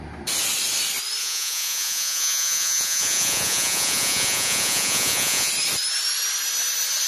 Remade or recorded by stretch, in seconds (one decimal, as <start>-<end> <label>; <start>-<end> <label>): 0.0-1.2 recorded; 1.2-5.5 remade; 5.5-7.1 recorded